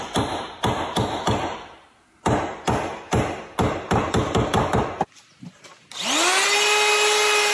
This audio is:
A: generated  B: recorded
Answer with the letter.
B